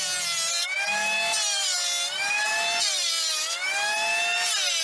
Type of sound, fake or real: real